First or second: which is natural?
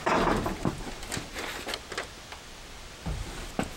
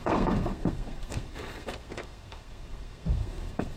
first